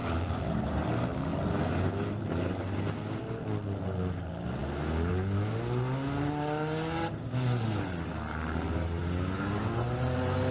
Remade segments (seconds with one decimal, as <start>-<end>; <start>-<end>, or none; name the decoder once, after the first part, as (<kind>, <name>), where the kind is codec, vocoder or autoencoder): 0.0-0.9 (vocoder, BigVGAN v2)